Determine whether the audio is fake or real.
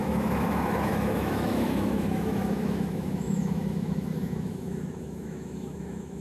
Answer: fake